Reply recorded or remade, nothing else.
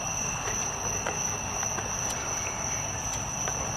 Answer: recorded